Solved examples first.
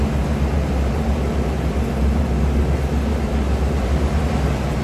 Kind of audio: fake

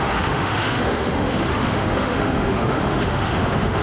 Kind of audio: fake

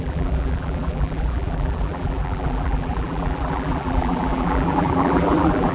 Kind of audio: fake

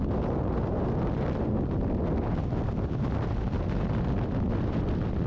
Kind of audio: real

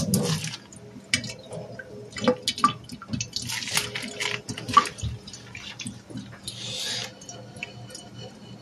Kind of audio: real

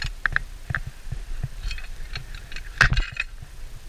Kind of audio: real